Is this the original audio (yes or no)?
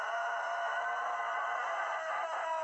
yes